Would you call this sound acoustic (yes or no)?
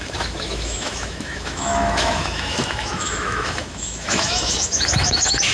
no